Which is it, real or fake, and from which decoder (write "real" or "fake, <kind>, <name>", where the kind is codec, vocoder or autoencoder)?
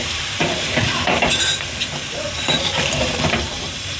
fake, vocoder, BigVGAN v2